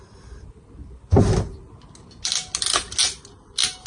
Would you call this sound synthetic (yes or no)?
no